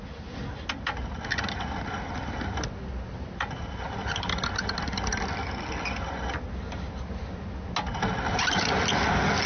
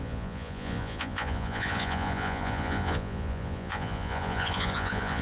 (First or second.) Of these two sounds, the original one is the first